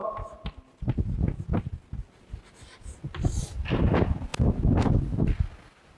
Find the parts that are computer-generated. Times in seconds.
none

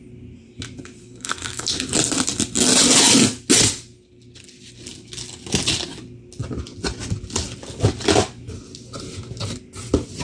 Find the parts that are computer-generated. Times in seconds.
1.0-1.7 (codec, SNAC)

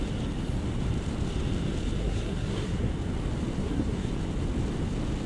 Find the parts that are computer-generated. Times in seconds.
2.0-2.9 (codec, SNAC); 3.6-4.1

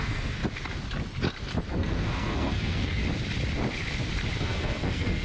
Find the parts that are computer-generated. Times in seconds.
0.0-0.4 (codec, SNAC); 1.7-3.0; 4.4-5.2

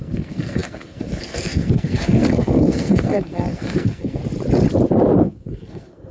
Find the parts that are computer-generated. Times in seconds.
0.0-4.2 (codec, SNAC); 5.2-6.1

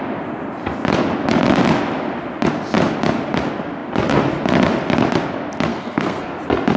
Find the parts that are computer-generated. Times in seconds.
5.7-6.3 (codec, SNAC)